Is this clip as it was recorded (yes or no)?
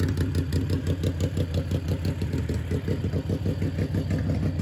yes